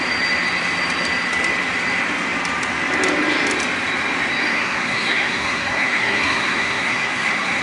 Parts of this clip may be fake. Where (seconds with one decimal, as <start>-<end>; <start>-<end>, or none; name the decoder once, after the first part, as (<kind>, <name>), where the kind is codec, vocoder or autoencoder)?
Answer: 4.4-7.6 (codec, SNAC)